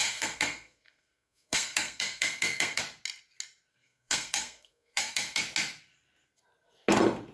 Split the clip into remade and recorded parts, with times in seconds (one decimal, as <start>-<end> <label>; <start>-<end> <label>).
0.0-2.8 remade; 2.8-3.7 recorded; 3.7-5.4 remade; 5.4-7.3 recorded